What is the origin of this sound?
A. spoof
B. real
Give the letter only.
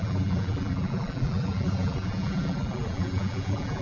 A